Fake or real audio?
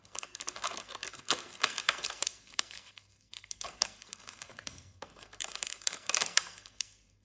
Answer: fake